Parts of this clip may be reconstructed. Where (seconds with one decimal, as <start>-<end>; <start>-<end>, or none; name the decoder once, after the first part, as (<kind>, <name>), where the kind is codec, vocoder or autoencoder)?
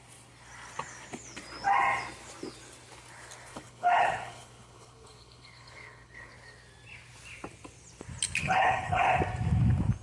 3.5-6.3 (codec, HILCodec); 8.4-9.2